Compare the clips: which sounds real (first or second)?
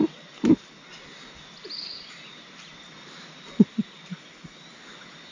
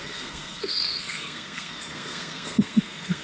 first